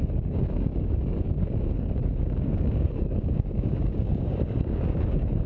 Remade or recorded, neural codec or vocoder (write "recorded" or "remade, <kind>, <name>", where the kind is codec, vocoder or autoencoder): remade, codec, DAC